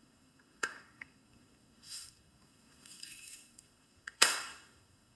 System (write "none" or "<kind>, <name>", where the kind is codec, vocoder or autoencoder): codec, SNAC